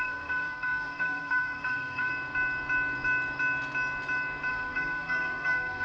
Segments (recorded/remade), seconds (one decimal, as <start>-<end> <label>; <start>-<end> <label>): 0.0-2.1 remade; 2.1-4.5 recorded; 4.5-5.8 remade